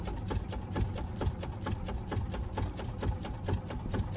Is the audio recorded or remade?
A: recorded